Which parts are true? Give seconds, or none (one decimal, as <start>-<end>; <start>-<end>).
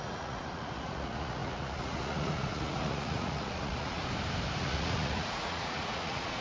4.0-4.6